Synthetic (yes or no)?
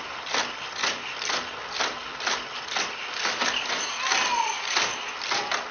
no